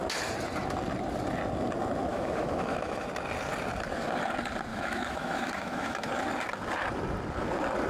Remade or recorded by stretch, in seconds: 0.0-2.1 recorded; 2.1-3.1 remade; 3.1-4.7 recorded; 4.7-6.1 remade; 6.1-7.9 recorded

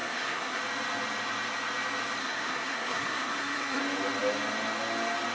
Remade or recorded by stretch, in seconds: 0.0-0.6 remade; 0.6-2.2 recorded; 2.2-3.8 remade; 3.8-5.3 recorded

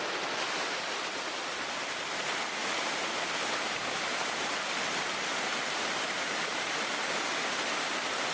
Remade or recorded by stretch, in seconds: 0.0-8.3 recorded

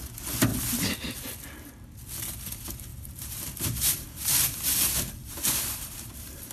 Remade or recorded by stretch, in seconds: 0.0-2.9 recorded; 2.9-4.6 remade; 4.6-5.2 recorded; 5.2-6.5 remade